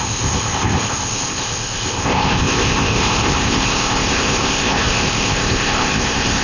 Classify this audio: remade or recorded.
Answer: remade